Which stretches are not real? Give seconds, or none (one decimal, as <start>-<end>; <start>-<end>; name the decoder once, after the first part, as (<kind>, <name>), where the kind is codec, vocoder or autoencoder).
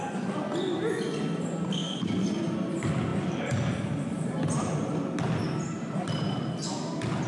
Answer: none